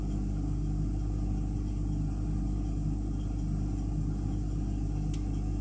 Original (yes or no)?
yes